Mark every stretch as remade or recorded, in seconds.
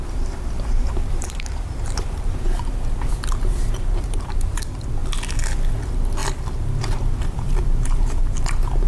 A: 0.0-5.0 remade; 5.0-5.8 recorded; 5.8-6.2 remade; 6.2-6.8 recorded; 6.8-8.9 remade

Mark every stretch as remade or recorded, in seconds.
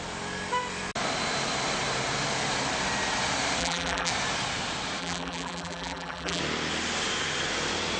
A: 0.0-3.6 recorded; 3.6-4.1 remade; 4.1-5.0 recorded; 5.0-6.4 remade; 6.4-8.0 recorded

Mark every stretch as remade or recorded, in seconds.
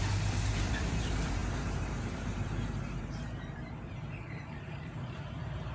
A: 0.0-5.7 remade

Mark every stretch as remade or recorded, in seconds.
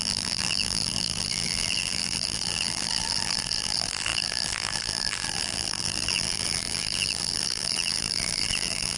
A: 0.0-9.0 remade